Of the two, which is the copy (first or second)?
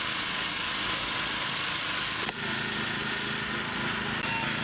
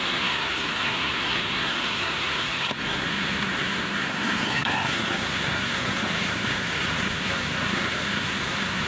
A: second